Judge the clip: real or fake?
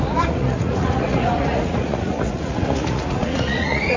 fake